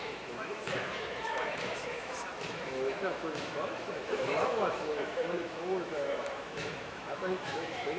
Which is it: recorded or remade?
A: remade